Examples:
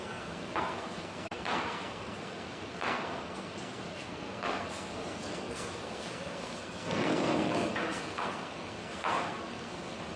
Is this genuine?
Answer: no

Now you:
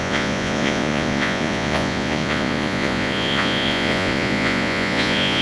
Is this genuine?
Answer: no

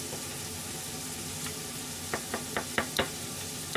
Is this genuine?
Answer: yes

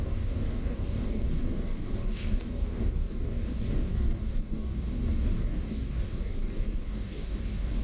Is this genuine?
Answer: no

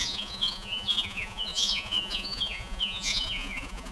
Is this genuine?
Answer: no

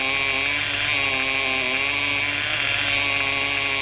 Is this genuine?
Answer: yes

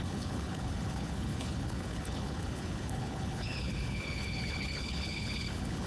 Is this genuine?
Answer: no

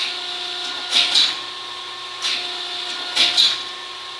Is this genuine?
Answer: yes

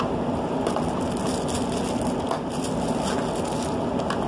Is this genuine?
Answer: yes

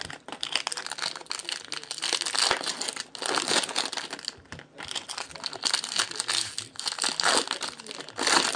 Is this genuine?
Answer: yes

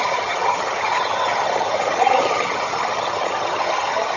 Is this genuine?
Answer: no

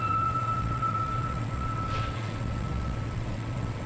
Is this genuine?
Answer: no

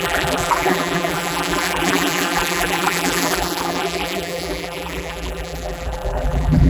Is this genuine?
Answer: no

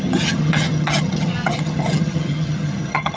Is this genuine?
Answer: no